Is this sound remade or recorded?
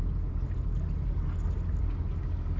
recorded